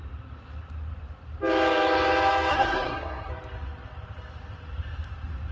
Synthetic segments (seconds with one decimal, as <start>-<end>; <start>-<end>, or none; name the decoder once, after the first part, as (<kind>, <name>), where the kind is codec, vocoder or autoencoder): 2.5-3.3 (codec, SNAC)